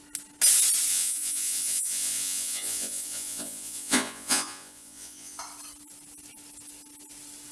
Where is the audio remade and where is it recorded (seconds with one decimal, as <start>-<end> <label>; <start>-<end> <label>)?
0.0-0.9 recorded; 0.9-5.4 remade; 5.4-7.5 recorded